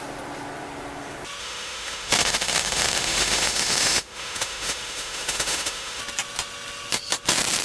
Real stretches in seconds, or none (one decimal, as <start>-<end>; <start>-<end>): 0.0-1.4; 6.0-7.6